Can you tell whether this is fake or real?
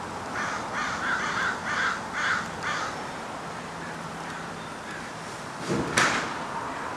real